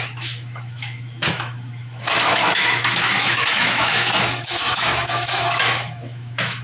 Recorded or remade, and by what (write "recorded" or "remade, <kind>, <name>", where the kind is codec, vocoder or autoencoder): remade, autoencoder, DAC-VAE